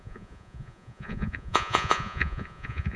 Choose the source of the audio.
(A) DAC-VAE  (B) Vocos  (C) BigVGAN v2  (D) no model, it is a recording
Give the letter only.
B